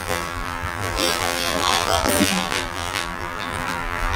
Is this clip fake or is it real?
fake